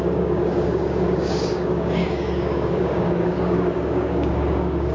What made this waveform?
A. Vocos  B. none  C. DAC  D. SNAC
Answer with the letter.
C